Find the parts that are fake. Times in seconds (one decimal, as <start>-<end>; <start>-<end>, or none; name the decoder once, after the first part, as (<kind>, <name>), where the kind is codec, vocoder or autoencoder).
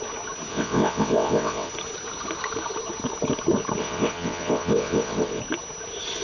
0.5-1.7 (vocoder, WaveNeXt); 3.8-5.4